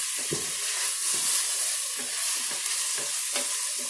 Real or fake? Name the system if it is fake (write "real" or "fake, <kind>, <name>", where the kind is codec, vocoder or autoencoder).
real